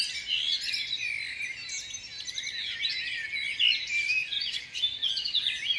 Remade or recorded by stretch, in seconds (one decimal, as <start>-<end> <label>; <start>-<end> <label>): 0.0-4.2 recorded; 4.2-5.8 remade